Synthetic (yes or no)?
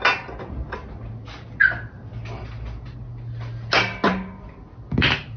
no